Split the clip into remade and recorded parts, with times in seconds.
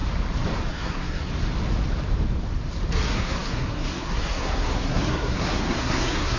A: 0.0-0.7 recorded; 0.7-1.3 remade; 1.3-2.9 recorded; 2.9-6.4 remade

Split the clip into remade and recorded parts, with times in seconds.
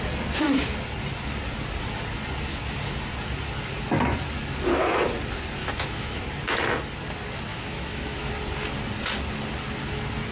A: 0.0-5.6 recorded; 5.6-6.2 remade; 6.2-7.5 recorded; 7.5-8.3 remade; 8.3-10.3 recorded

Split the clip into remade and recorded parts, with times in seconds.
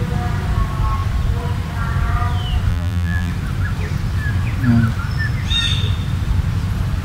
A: 0.0-2.7 recorded; 2.7-3.3 remade; 3.3-7.0 recorded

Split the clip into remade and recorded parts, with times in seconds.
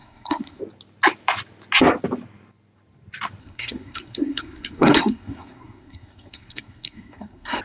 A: 0.0-0.6 remade; 0.6-3.4 recorded; 3.4-7.6 remade